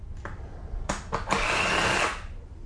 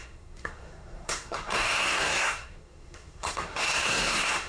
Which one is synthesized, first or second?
second